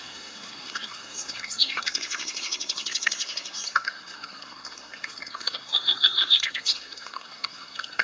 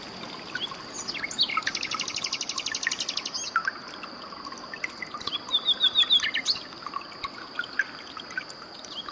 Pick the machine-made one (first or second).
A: first